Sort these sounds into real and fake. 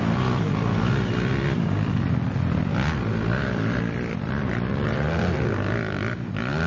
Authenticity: real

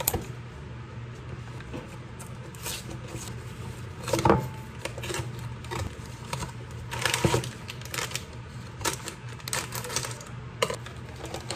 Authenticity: real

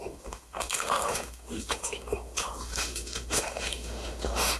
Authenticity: fake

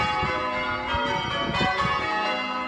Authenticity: real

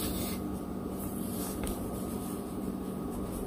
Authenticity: fake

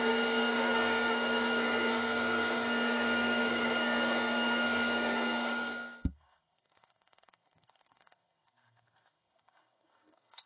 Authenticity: fake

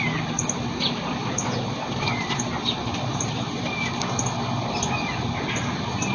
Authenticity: real